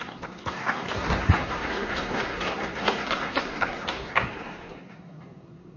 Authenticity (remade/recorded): remade